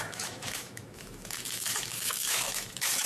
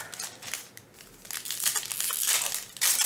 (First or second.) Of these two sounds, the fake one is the first